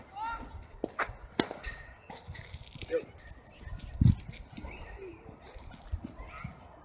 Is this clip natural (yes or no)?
yes